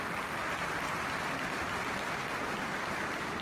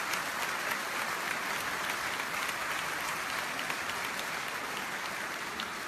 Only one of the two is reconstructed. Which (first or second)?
first